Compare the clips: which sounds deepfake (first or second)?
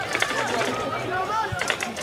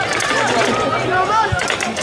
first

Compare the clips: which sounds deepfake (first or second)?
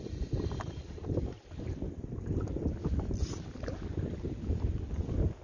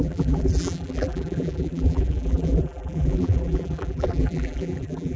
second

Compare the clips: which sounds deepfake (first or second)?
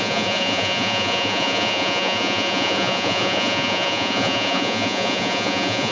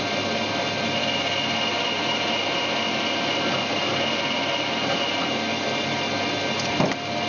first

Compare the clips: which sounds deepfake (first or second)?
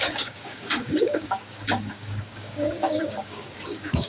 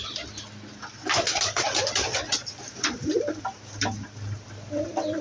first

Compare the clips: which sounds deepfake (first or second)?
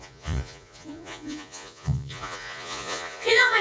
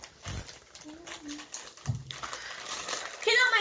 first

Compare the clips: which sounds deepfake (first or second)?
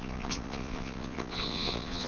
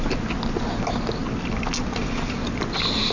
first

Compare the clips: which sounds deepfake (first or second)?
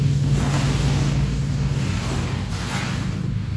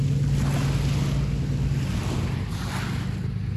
first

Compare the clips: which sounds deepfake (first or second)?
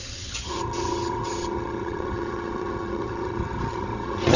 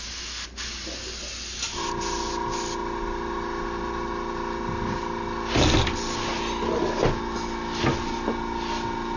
first